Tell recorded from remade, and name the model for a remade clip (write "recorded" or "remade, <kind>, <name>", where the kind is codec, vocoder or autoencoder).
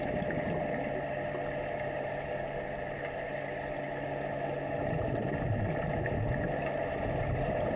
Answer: recorded